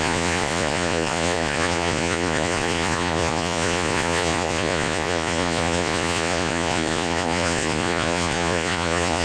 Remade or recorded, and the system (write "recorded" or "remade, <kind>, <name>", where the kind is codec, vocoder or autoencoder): remade, vocoder, Vocos